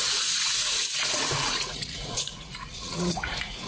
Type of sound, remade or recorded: remade